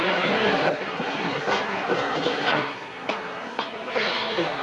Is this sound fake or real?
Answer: fake